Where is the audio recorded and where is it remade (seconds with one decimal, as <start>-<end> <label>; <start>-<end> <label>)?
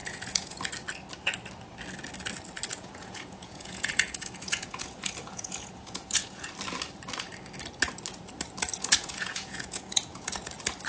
0.0-0.6 remade; 0.6-2.7 recorded; 2.7-6.5 remade; 6.5-8.7 recorded; 8.7-10.4 remade; 10.4-10.9 recorded